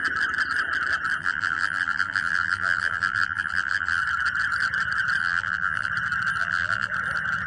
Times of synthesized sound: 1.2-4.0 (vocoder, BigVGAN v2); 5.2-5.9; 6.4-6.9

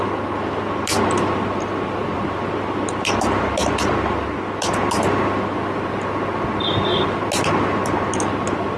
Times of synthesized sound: none

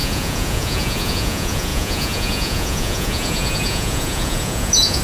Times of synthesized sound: 0.0-5.0 (vocoder, Vocos)